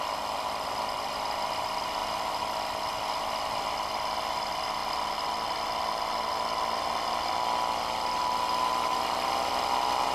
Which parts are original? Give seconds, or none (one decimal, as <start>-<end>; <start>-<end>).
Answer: 0.0-10.1